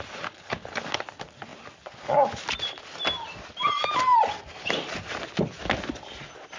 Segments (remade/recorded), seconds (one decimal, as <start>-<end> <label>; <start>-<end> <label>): 0.0-6.6 recorded